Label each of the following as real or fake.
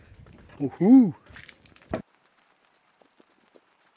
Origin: real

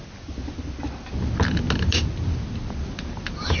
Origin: real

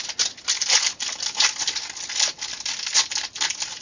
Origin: real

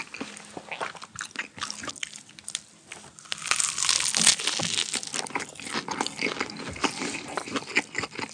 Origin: real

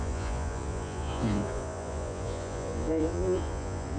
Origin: fake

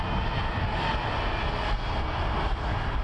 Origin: real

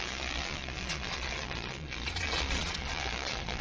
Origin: fake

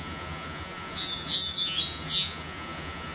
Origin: fake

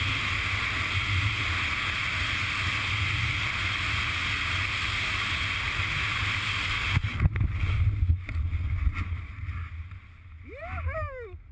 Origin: real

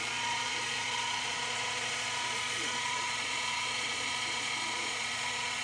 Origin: fake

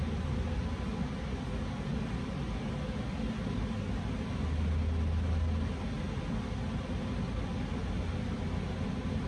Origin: real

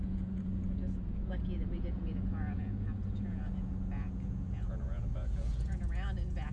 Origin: fake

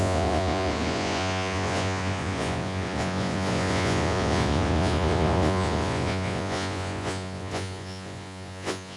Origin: fake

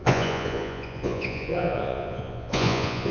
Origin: fake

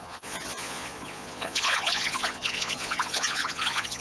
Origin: fake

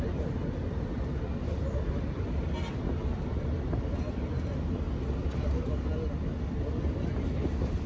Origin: real